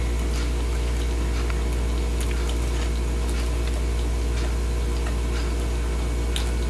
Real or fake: real